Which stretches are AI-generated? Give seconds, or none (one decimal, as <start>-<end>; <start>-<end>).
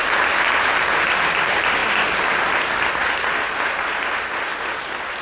none